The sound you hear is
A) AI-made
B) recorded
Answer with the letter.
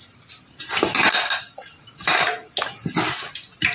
B